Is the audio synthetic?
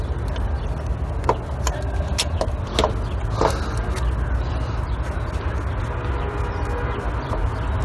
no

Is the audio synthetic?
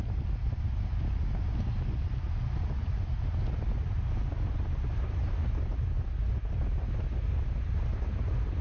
no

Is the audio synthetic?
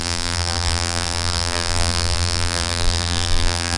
yes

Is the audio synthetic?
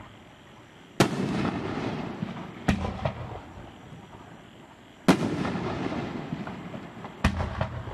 no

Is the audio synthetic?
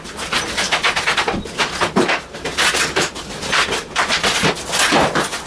no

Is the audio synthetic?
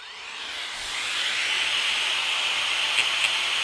no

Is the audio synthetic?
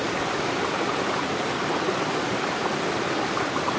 no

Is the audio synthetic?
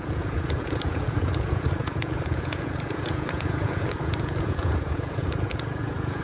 yes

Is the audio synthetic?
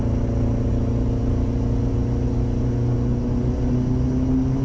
no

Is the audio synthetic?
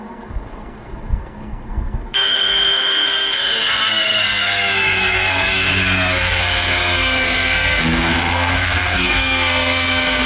yes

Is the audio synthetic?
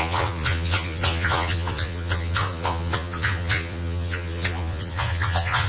yes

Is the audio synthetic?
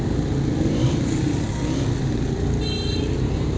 no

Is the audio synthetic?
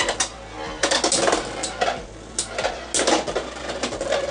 no